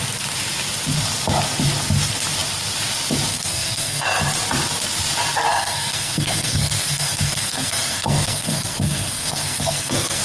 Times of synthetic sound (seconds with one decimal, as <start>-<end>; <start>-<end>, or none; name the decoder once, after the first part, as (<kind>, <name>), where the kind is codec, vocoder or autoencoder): 3.3-4.2 (codec, SNAC); 5.5-10.2